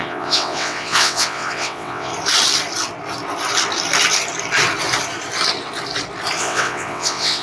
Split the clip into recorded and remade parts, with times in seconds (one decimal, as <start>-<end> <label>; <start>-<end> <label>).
0.0-2.1 remade; 2.1-6.4 recorded; 6.4-7.4 remade